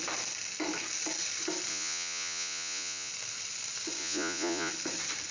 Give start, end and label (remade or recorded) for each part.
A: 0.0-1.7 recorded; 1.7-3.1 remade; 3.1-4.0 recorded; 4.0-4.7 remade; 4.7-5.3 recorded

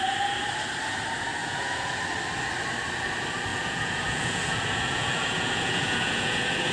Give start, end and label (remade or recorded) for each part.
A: 0.0-1.4 recorded; 1.4-2.0 remade; 2.0-3.5 recorded; 3.5-6.7 remade